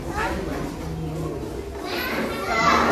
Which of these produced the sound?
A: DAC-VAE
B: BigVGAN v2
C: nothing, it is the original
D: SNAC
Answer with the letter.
C